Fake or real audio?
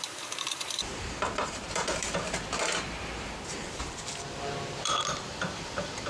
fake